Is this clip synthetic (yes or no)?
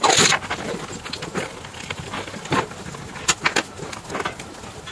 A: no